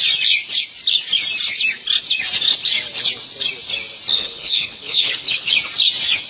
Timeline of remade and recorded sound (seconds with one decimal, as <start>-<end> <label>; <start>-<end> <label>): 0.0-4.1 recorded; 4.1-5.5 remade; 5.5-6.3 recorded